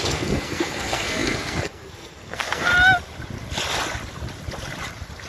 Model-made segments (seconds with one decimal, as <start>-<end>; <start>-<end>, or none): 0.0-2.7